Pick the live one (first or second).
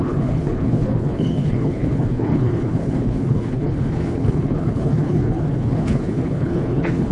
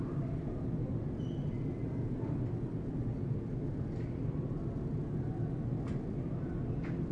second